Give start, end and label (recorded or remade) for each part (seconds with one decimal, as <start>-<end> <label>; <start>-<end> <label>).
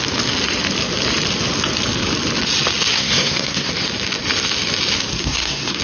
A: 0.0-2.9 recorded; 2.9-3.7 remade; 3.7-5.2 recorded; 5.2-5.8 remade